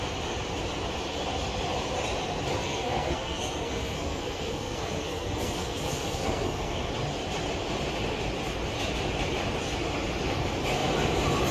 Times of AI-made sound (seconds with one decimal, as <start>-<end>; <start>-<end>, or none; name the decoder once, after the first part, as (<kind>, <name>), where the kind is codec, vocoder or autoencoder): 2.6-6.9 (codec, SNAC)